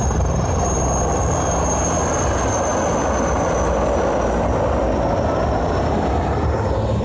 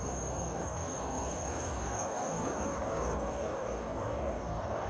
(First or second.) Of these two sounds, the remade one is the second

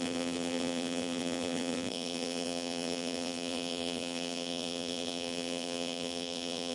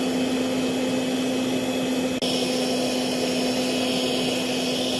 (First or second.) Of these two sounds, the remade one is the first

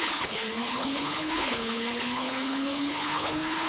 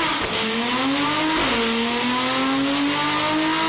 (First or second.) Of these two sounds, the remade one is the first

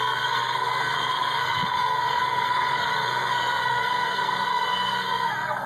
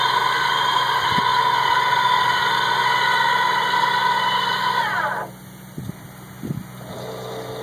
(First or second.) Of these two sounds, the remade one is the first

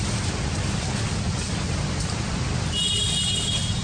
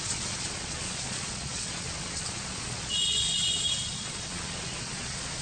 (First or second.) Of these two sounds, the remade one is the second